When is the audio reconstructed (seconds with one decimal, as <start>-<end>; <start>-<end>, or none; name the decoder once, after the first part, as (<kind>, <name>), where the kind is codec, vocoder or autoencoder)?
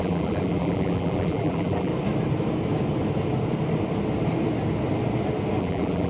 0.0-1.9 (vocoder, BigVGAN v2); 5.6-6.1